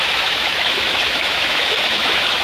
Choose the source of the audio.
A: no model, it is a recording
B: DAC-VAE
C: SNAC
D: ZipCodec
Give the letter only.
B